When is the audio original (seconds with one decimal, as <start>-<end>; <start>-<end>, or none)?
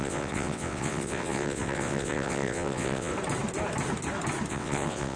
3.1-4.5